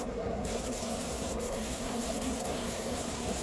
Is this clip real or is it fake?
fake